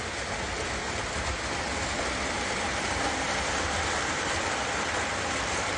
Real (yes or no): yes